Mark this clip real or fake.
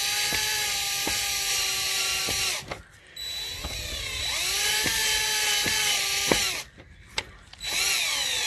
real